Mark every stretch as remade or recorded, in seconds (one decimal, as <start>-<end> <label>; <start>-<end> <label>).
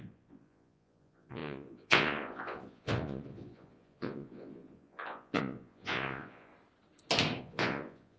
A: 0.0-6.5 remade; 6.5-7.4 recorded; 7.4-8.2 remade